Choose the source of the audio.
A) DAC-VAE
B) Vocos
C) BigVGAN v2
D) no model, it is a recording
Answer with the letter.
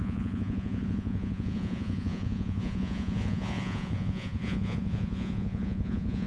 B